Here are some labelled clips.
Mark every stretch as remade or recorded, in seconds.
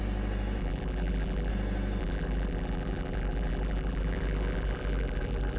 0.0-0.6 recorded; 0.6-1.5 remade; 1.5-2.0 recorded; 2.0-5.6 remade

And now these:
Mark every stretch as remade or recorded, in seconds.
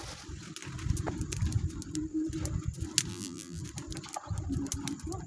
0.0-3.1 recorded; 3.1-3.6 remade; 3.6-5.3 recorded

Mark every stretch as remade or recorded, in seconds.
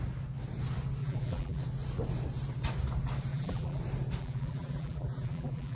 0.0-1.0 recorded; 1.0-1.6 remade; 1.6-3.3 recorded; 3.3-3.8 remade; 3.8-4.2 recorded; 4.2-5.8 remade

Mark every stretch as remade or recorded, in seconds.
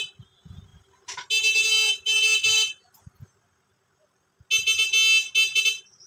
0.0-6.1 recorded